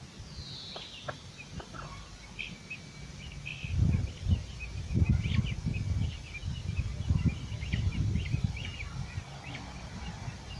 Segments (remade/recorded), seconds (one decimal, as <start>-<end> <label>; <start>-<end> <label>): 0.0-10.6 recorded